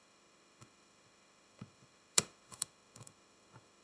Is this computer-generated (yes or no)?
yes